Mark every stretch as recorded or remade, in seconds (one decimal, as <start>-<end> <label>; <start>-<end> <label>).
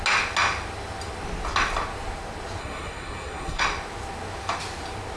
0.0-2.6 recorded; 2.6-3.6 remade; 3.6-5.2 recorded